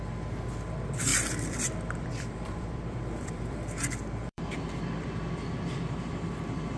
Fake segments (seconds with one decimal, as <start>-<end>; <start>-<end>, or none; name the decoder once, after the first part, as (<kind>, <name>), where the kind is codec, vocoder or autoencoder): 1.1-4.4 (vocoder, BigVGAN v2)